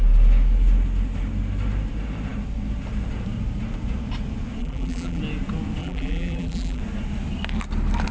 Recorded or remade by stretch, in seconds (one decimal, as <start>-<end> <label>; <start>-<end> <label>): 0.0-4.6 recorded; 4.6-5.2 remade; 5.2-5.8 recorded; 5.8-6.8 remade; 6.8-8.1 recorded